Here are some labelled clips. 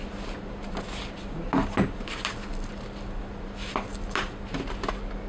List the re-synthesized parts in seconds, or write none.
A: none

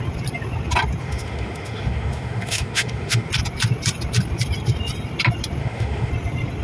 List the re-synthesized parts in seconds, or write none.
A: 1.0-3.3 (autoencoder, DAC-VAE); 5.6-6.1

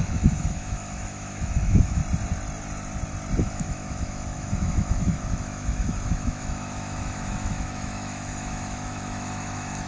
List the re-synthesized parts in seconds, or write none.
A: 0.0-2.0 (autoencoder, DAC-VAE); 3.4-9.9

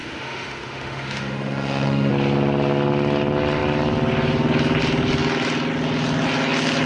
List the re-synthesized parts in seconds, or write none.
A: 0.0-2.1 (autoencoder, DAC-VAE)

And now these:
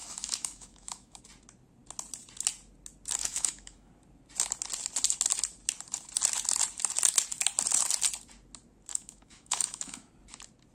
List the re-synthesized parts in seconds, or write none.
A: 0.0-1.2 (autoencoder, DAC-VAE); 3.2-3.9; 8.9-10.1